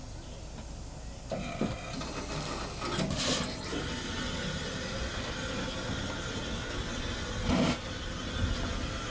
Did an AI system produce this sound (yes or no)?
no